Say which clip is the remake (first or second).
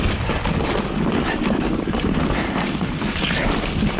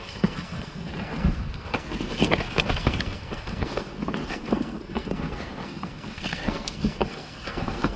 second